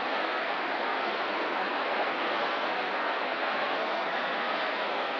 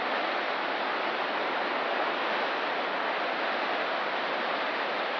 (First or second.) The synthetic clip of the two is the first